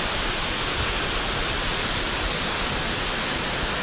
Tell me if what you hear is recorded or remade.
recorded